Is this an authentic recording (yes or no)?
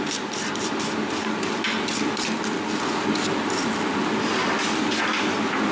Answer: yes